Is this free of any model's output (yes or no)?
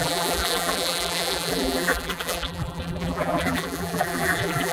no